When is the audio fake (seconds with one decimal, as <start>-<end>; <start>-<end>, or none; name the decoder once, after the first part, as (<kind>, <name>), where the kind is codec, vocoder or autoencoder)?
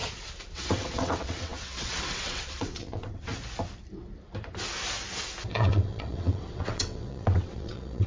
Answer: 0.5-3.3 (vocoder, WaveNeXt); 5.5-8.1